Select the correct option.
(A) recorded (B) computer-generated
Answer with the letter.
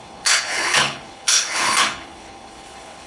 B